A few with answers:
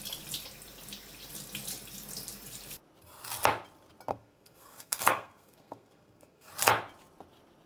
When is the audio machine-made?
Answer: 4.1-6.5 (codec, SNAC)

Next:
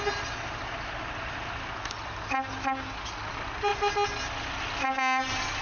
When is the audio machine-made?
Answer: none

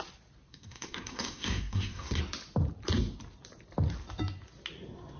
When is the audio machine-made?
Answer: 0.5-2.2 (codec, SNAC)

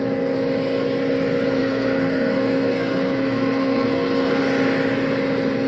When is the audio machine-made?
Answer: 1.6-4.4 (codec, SNAC)